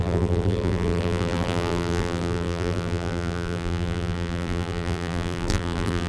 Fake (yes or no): yes